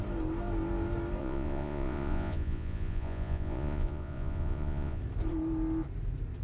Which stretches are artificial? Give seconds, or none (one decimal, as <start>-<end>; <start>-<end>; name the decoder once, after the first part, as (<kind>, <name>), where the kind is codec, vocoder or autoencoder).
1.2-5.0 (vocoder, Vocos)